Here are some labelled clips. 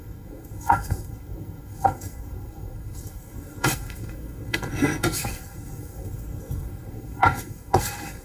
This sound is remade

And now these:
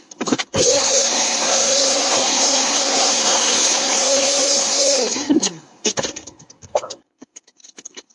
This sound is remade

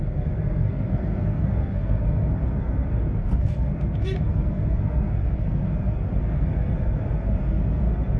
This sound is remade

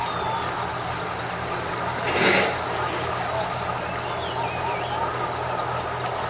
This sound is recorded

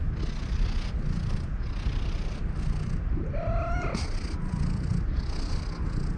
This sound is recorded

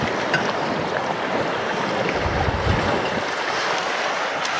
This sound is recorded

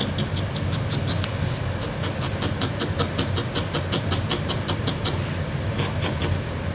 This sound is recorded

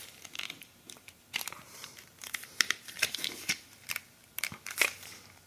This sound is remade